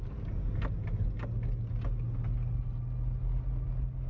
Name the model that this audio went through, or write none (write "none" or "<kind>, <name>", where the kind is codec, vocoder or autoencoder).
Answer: none